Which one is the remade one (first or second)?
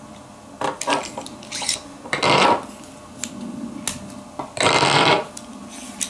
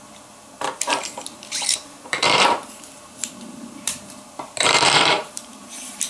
second